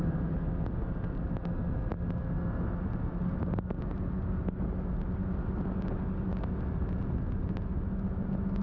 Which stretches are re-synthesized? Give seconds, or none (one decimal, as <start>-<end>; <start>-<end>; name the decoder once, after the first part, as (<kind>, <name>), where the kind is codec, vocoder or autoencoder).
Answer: none